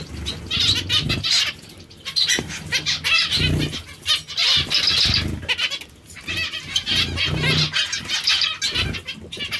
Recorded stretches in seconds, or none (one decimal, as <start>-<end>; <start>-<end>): 0.0-9.6